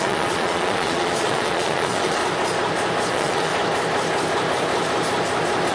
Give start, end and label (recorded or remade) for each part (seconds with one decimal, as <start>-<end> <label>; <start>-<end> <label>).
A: 0.0-2.2 remade; 2.2-3.1 recorded; 3.1-3.5 remade; 3.5-5.7 recorded